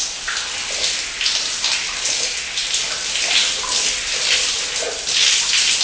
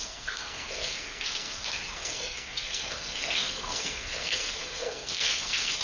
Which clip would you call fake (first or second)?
second